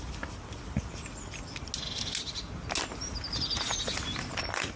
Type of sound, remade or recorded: recorded